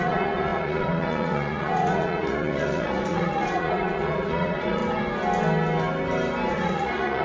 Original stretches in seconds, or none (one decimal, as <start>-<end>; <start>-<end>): 4.8-6.5